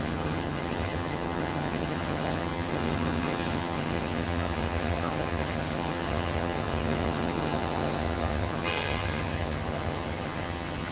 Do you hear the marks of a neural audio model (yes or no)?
yes